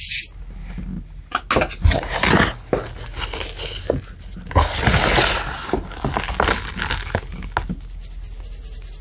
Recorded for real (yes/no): yes